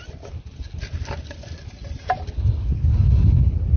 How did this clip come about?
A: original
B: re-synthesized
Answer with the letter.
A